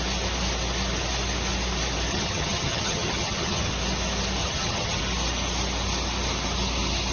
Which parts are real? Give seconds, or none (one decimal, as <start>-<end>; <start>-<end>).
0.0-2.1; 3.7-4.4; 5.0-7.1